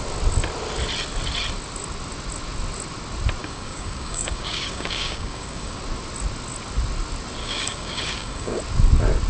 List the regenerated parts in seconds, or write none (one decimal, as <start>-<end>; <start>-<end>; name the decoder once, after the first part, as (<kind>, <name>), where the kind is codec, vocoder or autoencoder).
3.4-5.8 (codec, DAC); 7.4-8.6